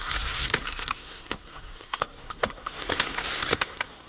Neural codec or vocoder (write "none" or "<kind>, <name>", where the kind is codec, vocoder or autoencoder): codec, SNAC